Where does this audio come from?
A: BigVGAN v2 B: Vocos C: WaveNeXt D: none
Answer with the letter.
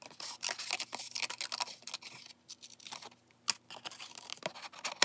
D